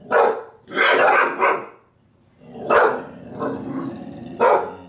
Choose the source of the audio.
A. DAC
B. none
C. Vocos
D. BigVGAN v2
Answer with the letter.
B